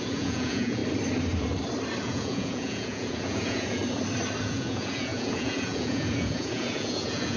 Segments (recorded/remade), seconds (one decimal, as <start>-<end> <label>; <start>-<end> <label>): 0.0-0.8 remade; 0.8-2.0 recorded; 2.0-3.8 remade; 3.8-4.4 recorded; 4.4-7.4 remade